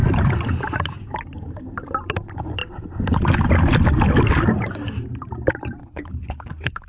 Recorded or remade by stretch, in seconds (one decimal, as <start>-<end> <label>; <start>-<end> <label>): 0.0-5.8 recorded; 5.8-6.9 remade